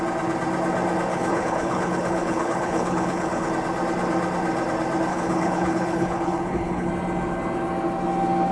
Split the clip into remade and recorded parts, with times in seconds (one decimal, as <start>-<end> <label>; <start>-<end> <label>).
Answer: 0.0-1.1 recorded; 1.1-3.5 remade; 3.5-5.1 recorded; 5.1-6.9 remade; 6.9-8.5 recorded